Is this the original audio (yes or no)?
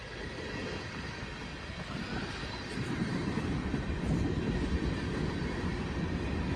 yes